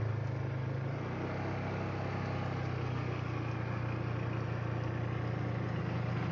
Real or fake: real